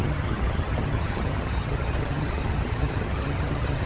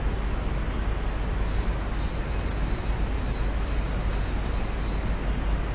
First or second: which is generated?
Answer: first